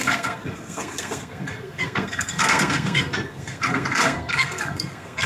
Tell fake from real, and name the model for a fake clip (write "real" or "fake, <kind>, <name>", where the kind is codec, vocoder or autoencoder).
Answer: fake, codec, SNAC